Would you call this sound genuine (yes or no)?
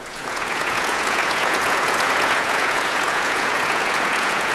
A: no